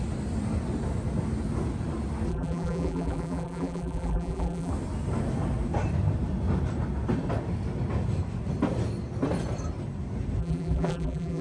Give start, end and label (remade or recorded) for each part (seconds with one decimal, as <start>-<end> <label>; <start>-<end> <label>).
0.0-2.3 recorded; 2.3-4.7 remade; 4.7-10.4 recorded; 10.4-11.4 remade